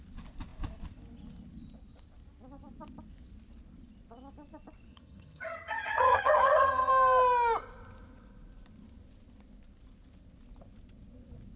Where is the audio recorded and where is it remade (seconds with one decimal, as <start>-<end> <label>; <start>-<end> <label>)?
0.0-4.9 recorded; 4.9-6.9 remade; 6.9-11.6 recorded